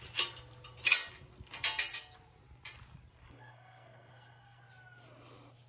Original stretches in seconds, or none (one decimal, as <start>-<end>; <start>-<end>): 0.0-3.2; 4.6-5.7